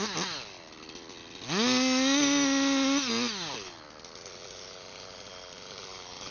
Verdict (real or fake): real